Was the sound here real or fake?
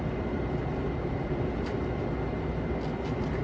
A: real